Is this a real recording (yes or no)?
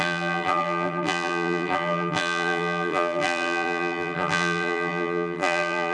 no